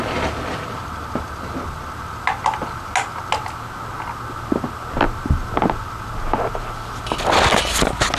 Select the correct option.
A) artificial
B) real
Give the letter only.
B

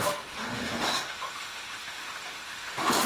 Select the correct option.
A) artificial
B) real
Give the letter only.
A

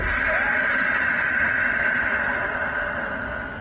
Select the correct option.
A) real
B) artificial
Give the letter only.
A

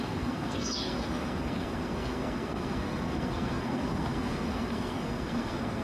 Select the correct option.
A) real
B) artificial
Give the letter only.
B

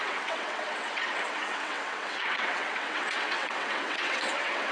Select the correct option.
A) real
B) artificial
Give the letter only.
B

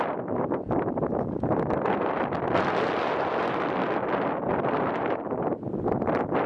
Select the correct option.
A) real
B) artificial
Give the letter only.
A